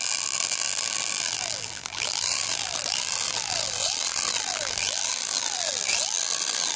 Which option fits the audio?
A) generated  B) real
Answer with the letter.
A